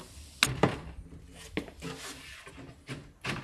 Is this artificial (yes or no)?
no